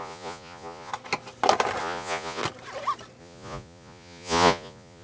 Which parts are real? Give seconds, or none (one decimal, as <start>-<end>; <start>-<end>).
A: 0.9-1.8; 2.4-3.2